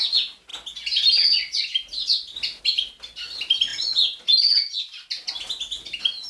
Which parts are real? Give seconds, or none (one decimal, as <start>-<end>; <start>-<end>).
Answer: 0.0-6.3

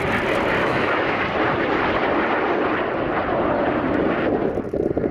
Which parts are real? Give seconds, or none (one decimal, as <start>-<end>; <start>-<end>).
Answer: 0.0-0.6; 1.2-5.1

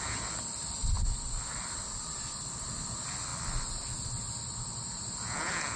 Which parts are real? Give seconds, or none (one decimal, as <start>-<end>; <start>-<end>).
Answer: 0.0-5.8

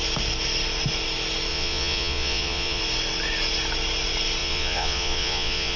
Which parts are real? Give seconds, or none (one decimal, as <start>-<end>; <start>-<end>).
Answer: 0.0-1.5; 2.8-4.4